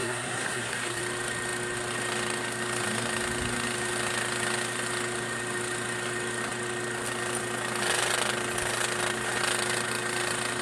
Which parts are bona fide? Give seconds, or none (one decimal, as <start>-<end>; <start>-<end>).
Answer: 1.0-10.6